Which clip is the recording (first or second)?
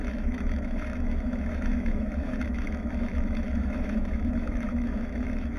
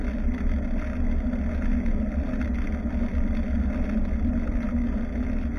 second